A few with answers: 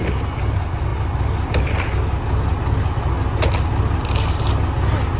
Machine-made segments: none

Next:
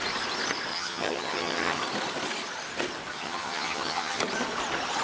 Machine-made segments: 0.7-1.8 (vocoder, HiFi-GAN); 3.1-4.2

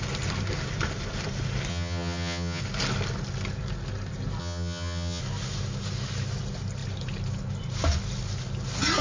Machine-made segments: 1.7-2.6 (vocoder, HiFi-GAN); 4.4-5.2

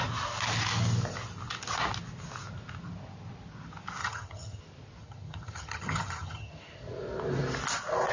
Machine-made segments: 4.0-4.6 (vocoder, HiFi-GAN); 5.0-6.5

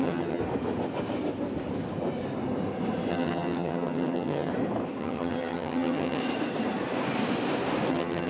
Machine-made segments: 0.0-0.4 (vocoder, HiFi-GAN); 3.1-4.5; 5.0-6.2; 7.9-8.3

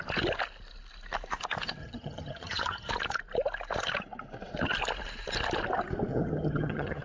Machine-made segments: 1.8-2.9 (vocoder, HiFi-GAN); 6.1-7.0

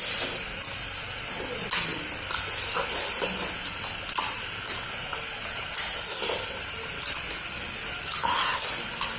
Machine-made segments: none